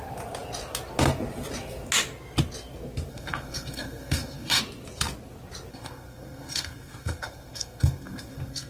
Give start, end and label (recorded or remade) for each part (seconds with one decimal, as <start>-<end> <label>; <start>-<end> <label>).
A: 0.0-3.1 recorded; 3.1-4.6 remade; 4.6-5.7 recorded; 5.7-8.7 remade